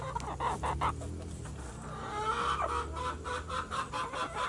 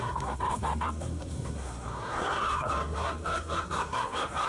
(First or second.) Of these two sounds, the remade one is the second